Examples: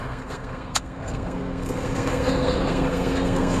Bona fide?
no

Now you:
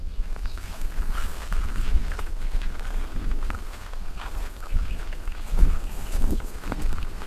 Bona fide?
no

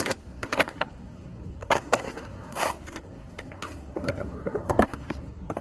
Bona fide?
no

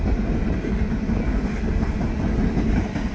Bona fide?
yes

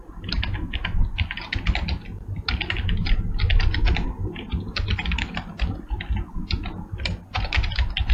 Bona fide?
yes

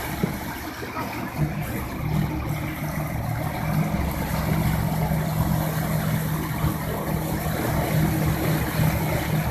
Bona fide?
yes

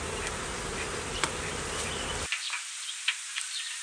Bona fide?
yes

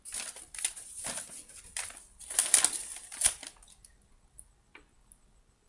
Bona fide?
yes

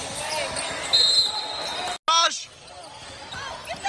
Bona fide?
yes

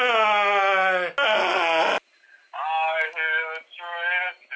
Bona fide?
yes